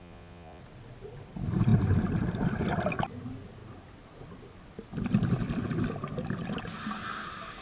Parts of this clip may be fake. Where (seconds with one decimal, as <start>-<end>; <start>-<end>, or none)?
0.0-0.6